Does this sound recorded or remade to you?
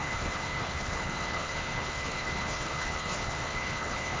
remade